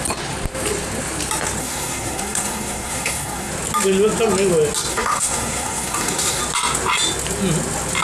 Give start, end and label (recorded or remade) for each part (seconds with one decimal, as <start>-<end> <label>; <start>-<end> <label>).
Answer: 0.0-1.6 recorded; 1.6-3.5 remade; 3.5-4.9 recorded; 4.9-6.4 remade; 6.4-8.0 recorded